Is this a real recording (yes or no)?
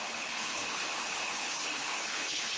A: no